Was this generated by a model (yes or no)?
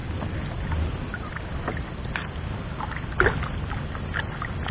no